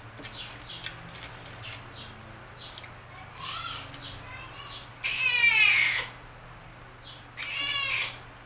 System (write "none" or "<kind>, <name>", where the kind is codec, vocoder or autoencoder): none